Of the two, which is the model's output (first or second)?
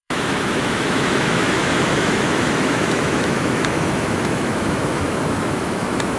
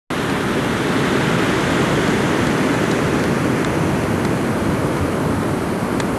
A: first